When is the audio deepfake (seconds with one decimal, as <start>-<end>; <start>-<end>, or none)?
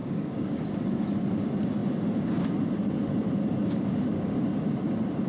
0.0-0.6; 3.6-4.4